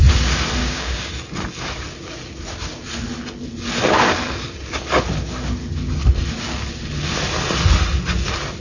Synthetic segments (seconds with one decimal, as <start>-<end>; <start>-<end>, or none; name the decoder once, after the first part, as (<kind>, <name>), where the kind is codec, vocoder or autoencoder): 0.6-1.1 (codec, DAC)